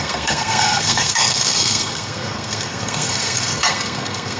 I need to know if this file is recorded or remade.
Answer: remade